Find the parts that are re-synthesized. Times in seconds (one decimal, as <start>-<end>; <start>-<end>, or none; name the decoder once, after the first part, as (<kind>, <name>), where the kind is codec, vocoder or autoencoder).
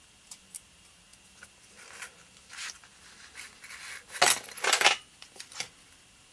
0.0-1.1 (vocoder, BigVGAN v2); 4.7-6.3